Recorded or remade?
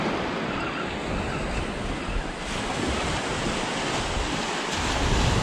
recorded